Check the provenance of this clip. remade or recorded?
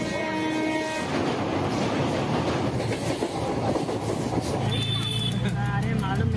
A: recorded